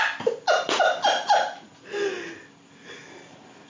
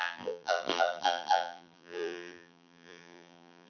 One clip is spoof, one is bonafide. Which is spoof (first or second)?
second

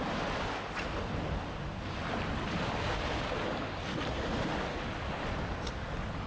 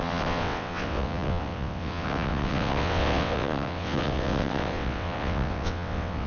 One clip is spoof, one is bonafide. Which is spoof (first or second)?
second